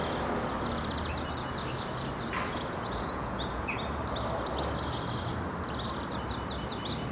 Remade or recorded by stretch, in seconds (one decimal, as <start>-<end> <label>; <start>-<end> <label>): 0.0-2.5 recorded; 2.5-3.7 remade; 3.7-7.1 recorded